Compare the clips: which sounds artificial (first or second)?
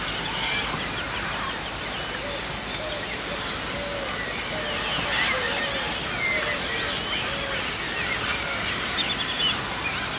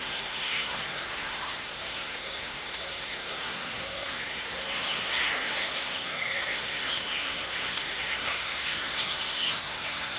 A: second